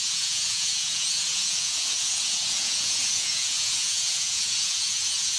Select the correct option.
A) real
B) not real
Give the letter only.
B